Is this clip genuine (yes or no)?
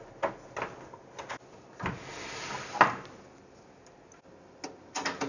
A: yes